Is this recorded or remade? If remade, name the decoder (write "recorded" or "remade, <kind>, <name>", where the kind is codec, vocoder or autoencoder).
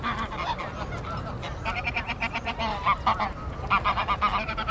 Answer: recorded